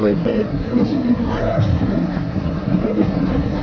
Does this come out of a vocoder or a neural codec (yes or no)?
yes